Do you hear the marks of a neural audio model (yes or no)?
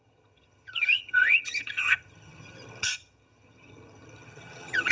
yes